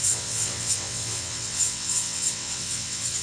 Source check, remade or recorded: remade